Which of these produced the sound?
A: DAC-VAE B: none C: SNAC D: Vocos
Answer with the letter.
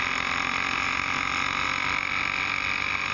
B